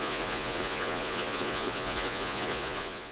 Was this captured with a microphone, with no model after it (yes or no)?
no